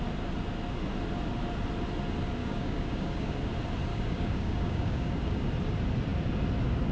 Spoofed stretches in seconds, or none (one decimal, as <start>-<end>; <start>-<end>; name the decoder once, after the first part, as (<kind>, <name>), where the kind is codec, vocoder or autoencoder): 2.4-3.5 (codec, DAC); 3.9-5.5